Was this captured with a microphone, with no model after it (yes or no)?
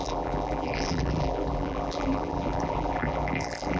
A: no